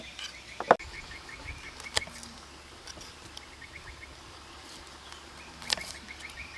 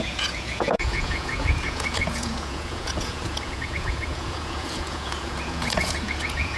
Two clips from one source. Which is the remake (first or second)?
second